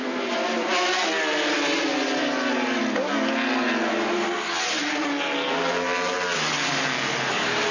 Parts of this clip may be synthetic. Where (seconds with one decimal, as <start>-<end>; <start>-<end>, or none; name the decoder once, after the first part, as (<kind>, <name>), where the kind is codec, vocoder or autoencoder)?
none